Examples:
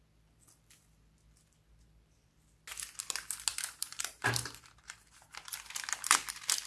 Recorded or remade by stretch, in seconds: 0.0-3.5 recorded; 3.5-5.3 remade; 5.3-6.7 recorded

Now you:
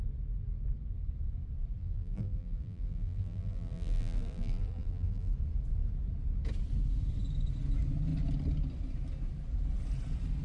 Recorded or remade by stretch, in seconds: 0.0-1.8 recorded; 1.8-5.3 remade; 5.3-10.4 recorded